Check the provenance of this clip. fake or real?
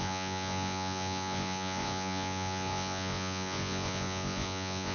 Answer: fake